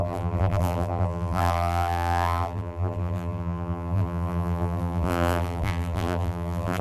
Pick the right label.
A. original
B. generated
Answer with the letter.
B